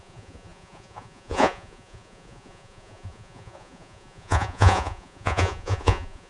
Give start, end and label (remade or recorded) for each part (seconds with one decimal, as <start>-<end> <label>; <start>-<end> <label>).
0.0-6.3 remade